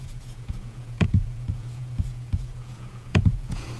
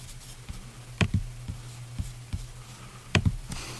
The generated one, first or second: first